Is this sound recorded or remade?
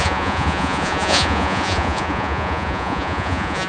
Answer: remade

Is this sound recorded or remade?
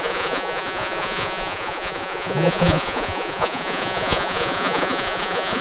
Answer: remade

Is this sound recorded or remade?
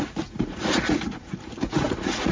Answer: remade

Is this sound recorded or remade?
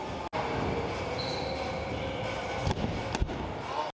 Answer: recorded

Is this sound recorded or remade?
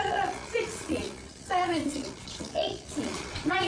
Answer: remade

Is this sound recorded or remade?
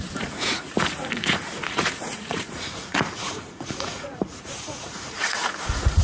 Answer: remade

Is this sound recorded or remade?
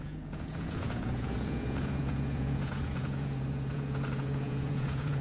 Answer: remade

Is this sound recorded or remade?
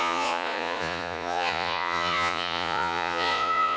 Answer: remade